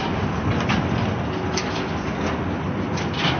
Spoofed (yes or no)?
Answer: no